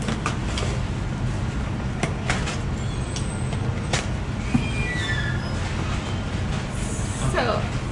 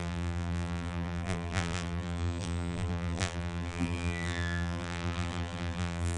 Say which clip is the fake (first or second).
second